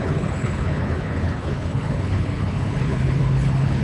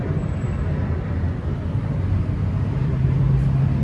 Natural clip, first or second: second